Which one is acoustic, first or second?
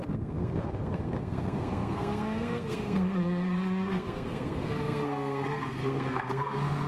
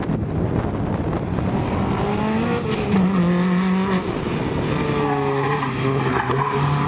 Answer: second